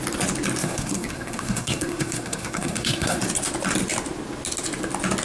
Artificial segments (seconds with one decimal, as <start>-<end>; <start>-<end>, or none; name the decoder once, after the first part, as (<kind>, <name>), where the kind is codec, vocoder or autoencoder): 0.6-3.2 (codec, SNAC)